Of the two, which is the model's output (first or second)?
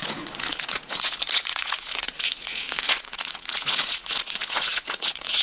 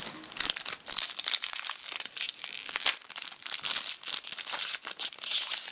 first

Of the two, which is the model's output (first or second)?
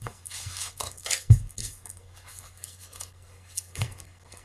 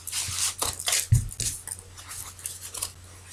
first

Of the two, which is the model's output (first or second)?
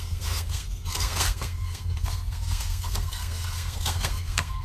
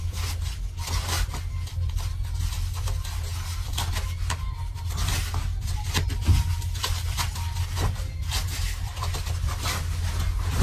first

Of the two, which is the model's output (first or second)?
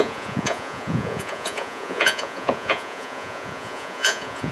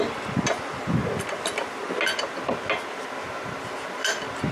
first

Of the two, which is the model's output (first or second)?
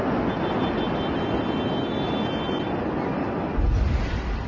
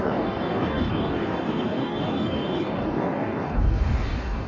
second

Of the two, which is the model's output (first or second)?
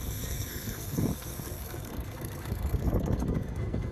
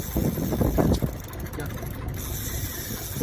first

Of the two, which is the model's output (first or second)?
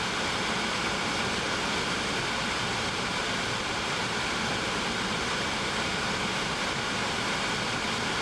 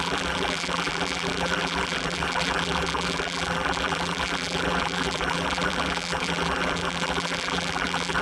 second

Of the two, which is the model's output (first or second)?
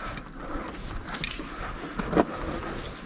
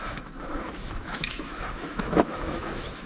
second